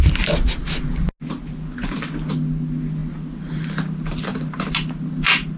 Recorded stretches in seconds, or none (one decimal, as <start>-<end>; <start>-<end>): 0.0-5.6